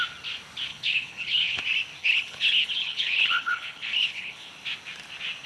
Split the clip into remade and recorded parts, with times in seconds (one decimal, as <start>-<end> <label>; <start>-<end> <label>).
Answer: 0.0-0.7 recorded; 0.7-1.6 remade; 1.6-2.0 recorded; 2.0-4.5 remade; 4.5-5.5 recorded